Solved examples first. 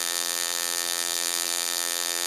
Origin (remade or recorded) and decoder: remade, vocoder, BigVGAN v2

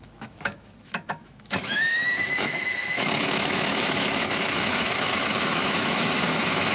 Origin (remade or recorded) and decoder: remade, autoencoder, DAC-VAE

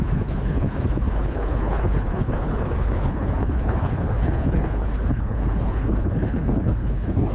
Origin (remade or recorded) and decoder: remade, codec, HILCodec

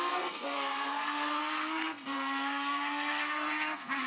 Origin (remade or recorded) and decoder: remade, codec, SNAC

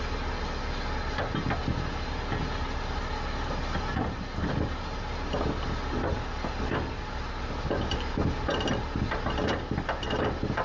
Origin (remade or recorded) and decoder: recorded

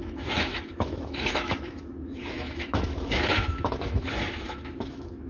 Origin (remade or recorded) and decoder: remade, autoencoder, DAC-VAE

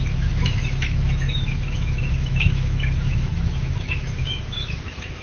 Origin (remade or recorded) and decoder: remade, autoencoder, DAC-VAE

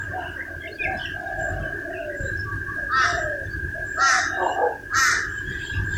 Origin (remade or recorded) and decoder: remade, vocoder, BigVGAN v2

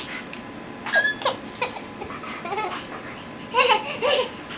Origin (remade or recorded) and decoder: recorded